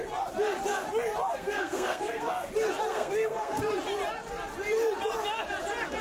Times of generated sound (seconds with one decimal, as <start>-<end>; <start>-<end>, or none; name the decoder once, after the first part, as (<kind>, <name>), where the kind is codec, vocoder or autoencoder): 1.3-2.5 (codec, SNAC); 2.9-3.6